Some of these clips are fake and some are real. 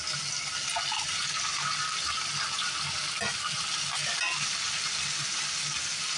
real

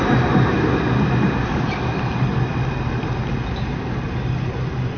real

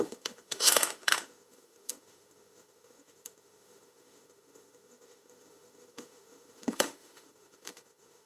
fake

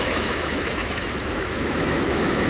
fake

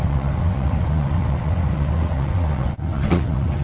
fake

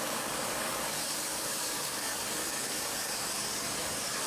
fake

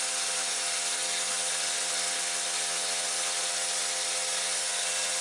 real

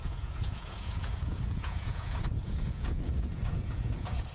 fake